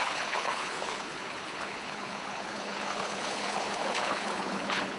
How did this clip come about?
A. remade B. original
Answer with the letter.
A